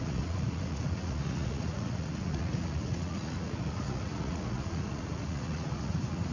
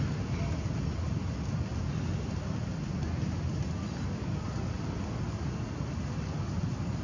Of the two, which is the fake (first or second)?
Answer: first